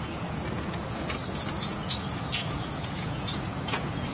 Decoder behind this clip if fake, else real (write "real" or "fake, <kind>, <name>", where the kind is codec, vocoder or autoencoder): fake, vocoder, Vocos